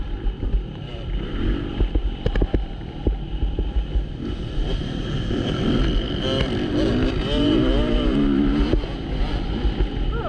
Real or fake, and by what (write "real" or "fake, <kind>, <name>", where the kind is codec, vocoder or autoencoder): real